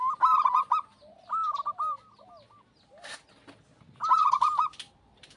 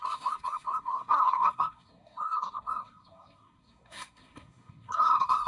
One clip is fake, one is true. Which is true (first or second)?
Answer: first